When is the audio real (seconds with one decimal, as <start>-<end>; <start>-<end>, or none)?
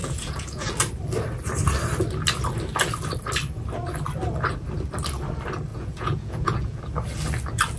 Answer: 0.7-5.7; 6.8-7.8